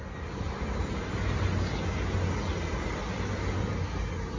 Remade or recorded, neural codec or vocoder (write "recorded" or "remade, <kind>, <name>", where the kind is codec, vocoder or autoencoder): recorded